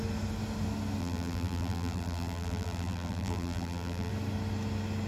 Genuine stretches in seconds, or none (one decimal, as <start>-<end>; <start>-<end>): 0.0-1.0; 4.1-5.1